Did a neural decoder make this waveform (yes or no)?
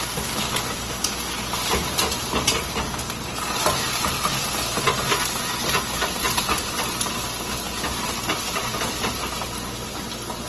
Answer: no